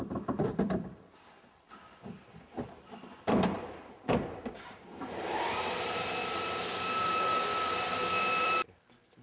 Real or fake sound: fake